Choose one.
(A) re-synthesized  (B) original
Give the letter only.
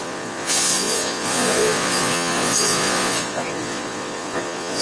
A